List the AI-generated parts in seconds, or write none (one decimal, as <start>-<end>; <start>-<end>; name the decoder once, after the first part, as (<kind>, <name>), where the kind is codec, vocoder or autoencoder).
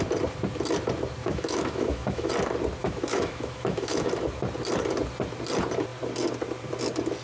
1.2-2.3 (autoencoder, DAC-VAE); 2.8-4.1